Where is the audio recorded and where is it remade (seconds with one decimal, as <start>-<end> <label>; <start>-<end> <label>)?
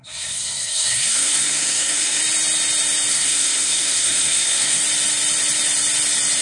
0.0-2.2 remade; 2.2-3.1 recorded; 3.1-4.8 remade; 4.8-6.4 recorded